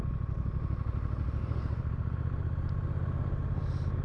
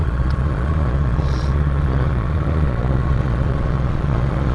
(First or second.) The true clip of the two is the first